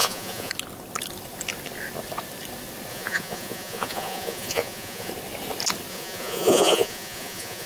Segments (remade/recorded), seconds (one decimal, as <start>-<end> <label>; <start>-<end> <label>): 0.0-0.5 remade; 0.5-2.9 recorded; 2.9-5.1 remade; 5.1-5.9 recorded; 5.9-7.7 remade